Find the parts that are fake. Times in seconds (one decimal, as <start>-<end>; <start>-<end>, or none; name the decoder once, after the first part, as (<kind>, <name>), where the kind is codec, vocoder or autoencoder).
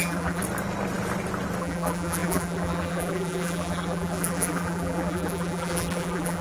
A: 0.0-0.4 (vocoder, BigVGAN v2); 1.6-6.4